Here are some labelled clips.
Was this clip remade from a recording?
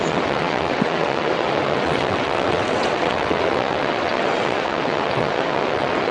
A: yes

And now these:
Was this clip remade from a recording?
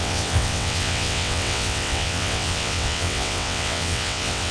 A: yes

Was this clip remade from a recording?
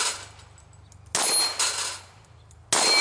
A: no